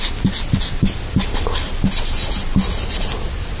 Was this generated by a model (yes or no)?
no